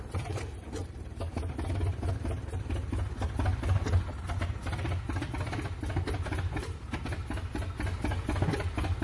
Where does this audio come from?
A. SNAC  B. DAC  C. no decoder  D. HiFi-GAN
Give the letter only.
C